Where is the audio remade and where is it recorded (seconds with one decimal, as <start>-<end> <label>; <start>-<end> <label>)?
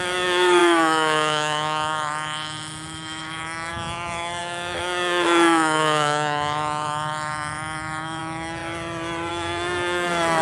0.0-8.6 remade; 8.6-9.3 recorded; 9.3-10.4 remade